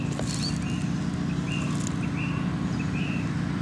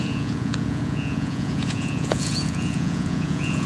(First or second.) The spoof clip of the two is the second